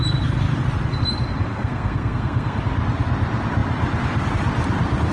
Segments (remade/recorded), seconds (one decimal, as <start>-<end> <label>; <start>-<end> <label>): 0.0-1.5 recorded; 1.5-2.6 remade; 2.6-5.1 recorded